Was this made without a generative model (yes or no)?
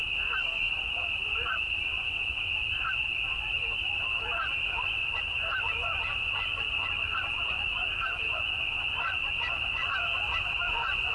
no